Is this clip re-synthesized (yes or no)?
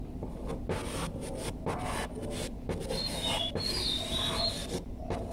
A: no